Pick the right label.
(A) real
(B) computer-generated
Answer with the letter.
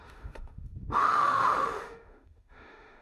B